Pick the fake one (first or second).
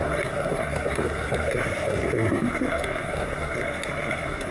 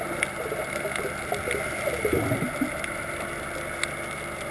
first